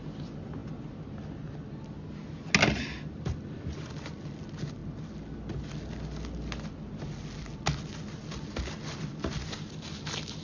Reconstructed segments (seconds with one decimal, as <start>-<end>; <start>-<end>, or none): none